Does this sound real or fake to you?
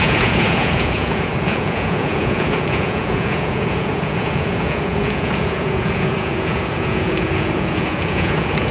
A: fake